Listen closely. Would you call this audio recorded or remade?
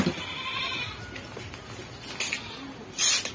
recorded